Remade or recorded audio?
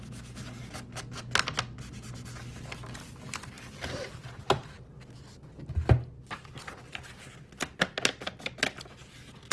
recorded